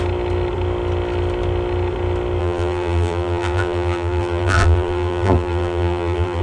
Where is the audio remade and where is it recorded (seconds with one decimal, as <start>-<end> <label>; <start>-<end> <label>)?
0.0-2.4 recorded; 2.4-6.4 remade

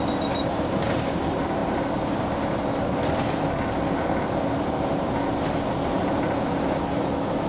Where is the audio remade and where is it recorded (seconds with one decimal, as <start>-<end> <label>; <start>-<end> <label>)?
0.0-0.4 recorded; 0.4-1.2 remade; 1.2-1.6 recorded; 1.6-2.3 remade; 2.3-7.5 recorded